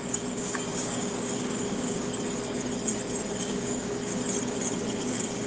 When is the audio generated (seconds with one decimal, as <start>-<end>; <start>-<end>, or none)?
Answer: 0.0-2.1; 3.4-4.1; 5.0-5.5